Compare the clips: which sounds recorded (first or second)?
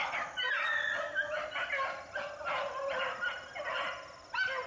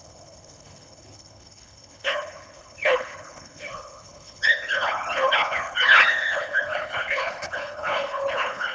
first